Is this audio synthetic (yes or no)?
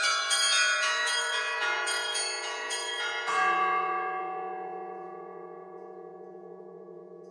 yes